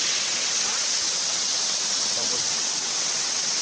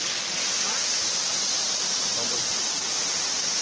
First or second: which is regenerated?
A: first